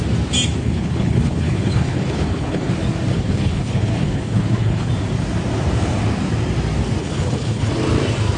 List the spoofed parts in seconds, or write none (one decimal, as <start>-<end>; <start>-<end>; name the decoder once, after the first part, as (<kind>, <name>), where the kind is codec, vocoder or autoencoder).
0.6-2.7 (codec, HILCodec); 3.1-4.9; 7.0-7.7